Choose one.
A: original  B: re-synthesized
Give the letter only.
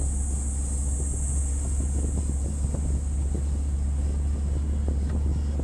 A